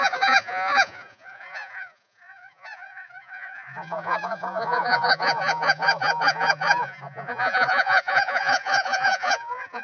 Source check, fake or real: fake